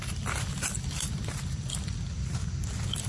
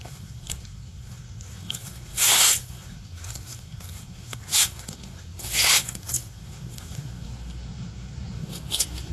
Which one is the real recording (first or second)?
first